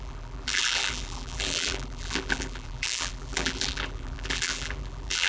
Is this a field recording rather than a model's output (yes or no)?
no